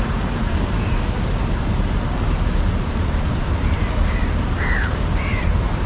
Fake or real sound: fake